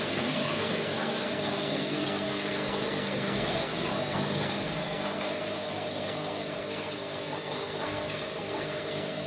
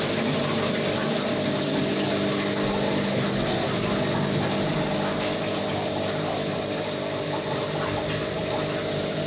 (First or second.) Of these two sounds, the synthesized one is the first